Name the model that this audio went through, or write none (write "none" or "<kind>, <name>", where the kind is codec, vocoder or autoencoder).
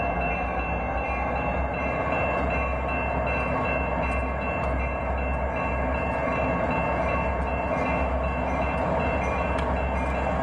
none